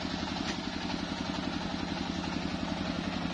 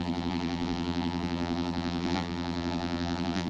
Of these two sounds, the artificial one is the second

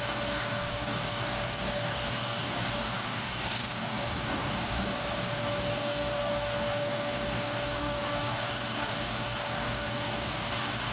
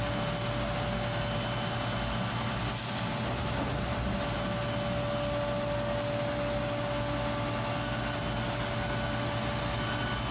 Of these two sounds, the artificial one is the first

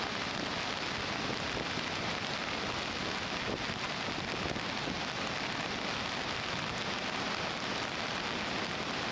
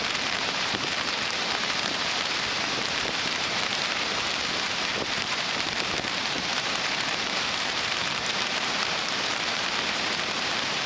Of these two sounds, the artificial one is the second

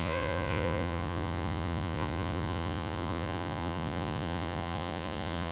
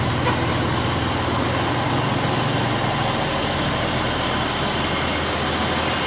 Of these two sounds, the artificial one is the first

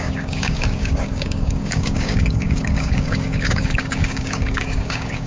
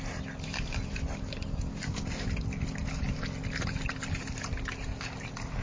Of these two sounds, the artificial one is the first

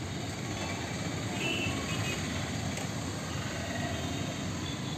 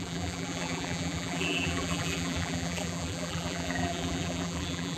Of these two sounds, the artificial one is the second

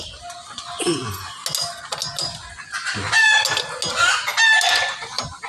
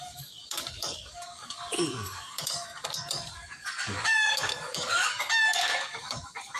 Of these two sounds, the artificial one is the second